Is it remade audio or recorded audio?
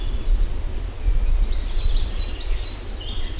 recorded